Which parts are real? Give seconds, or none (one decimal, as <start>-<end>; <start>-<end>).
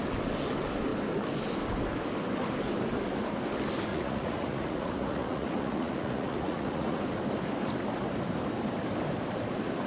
0.0-3.9; 7.0-9.9